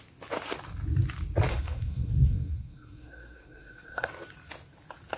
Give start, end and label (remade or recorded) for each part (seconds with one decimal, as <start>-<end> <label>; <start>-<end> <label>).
0.0-1.5 recorded; 1.5-4.1 remade; 4.1-5.2 recorded